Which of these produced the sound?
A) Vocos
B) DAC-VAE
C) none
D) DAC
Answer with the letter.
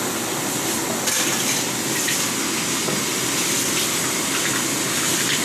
C